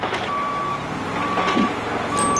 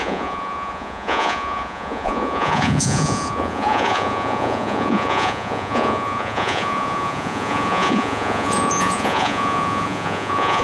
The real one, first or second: first